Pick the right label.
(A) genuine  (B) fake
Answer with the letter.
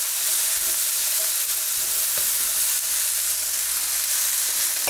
A